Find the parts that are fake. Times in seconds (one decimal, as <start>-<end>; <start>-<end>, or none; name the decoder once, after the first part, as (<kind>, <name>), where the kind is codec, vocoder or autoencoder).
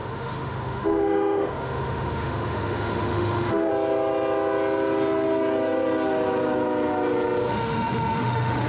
0.0-3.7 (autoencoder, DAC-VAE); 7.5-8.7